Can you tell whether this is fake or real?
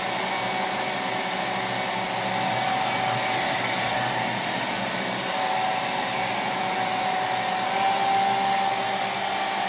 real